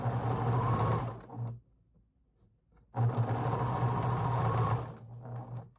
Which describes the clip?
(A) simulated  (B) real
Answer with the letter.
B